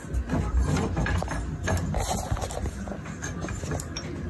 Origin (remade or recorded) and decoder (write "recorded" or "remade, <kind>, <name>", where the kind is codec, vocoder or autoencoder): recorded